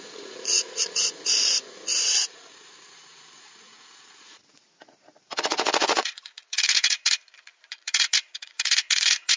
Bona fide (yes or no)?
no